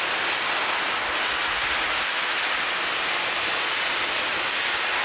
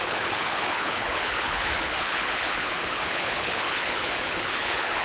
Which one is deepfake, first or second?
second